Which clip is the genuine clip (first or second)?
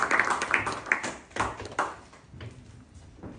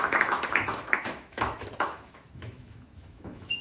first